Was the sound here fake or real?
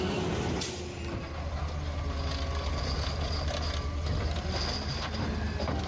real